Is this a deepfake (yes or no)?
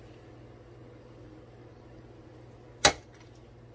no